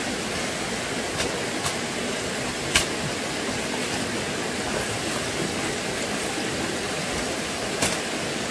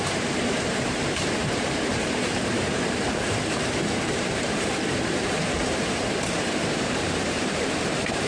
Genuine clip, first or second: first